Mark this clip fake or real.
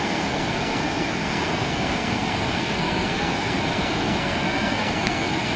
fake